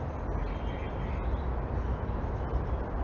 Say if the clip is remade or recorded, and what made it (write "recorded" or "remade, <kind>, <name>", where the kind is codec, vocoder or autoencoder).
recorded